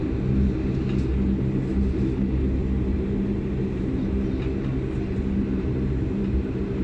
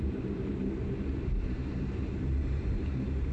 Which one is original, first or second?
first